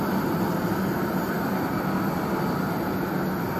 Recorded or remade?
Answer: recorded